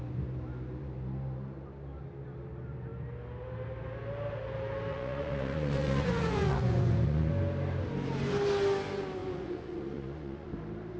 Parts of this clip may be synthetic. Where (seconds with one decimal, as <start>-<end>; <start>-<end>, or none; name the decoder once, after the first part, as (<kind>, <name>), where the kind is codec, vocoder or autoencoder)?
4.9-7.3 (vocoder, Vocos); 9.2-10.5